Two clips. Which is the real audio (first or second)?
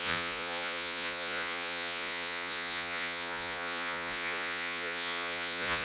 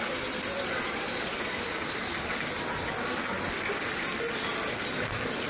second